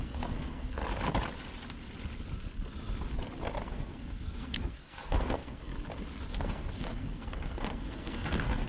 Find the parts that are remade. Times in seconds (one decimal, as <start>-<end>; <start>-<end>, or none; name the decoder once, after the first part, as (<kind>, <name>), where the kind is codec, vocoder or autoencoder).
0.0-0.8 (codec, SNAC); 3.6-5.7; 6.3-8.7